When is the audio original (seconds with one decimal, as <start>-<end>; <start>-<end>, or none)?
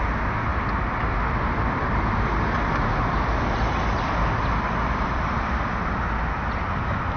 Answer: 0.0-7.2